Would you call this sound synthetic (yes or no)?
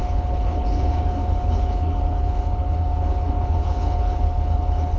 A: yes